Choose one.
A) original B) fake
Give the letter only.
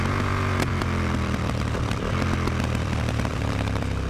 B